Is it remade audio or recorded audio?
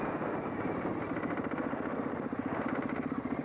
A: recorded